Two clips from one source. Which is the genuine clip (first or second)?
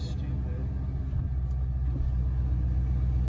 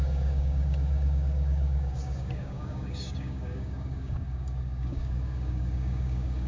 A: first